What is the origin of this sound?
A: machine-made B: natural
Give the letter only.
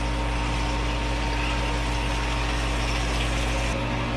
B